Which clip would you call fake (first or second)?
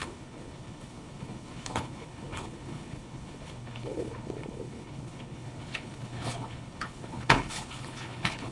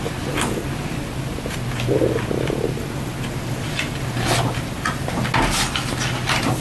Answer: first